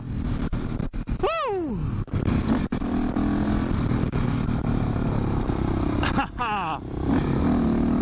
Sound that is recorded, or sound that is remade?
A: recorded